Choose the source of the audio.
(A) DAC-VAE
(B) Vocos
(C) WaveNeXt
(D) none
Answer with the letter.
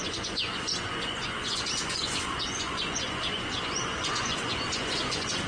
B